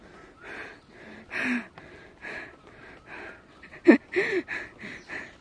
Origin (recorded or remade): recorded